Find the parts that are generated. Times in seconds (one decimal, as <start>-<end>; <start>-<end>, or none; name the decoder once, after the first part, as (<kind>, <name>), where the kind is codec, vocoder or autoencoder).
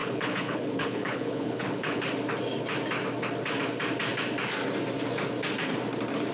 0.0-2.0 (codec, HILCodec)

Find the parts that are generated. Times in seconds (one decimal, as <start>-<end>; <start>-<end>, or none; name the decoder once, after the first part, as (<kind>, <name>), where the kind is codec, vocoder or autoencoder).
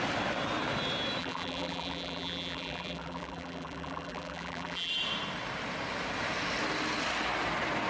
1.2-4.9 (vocoder, BigVGAN v2)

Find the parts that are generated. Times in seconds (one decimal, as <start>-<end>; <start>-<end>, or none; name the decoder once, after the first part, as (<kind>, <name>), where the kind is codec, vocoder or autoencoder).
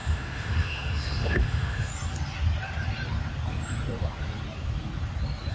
0.0-1.9 (autoencoder, DAC-VAE)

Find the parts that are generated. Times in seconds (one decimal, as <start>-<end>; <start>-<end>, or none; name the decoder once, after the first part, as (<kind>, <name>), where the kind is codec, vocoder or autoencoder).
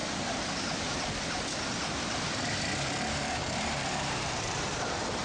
3.1-5.2 (vocoder, BigVGAN v2)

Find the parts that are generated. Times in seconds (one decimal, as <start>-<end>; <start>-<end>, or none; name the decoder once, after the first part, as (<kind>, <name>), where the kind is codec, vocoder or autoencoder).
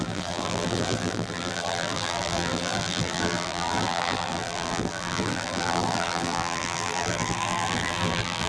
0.0-8.5 (vocoder, BigVGAN v2)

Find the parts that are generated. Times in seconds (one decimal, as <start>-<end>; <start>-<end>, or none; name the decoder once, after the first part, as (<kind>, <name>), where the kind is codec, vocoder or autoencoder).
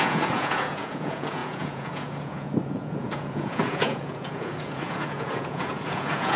0.0-6.4 (vocoder, Vocos)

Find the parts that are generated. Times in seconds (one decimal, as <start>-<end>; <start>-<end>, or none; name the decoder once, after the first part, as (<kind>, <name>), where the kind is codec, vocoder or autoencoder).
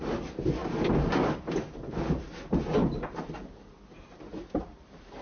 none